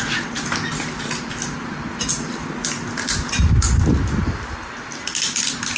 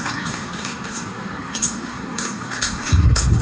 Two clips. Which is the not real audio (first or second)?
second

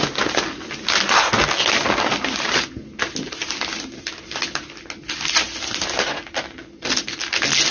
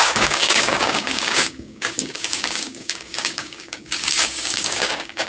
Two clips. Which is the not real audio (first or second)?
second